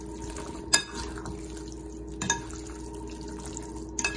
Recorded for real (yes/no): yes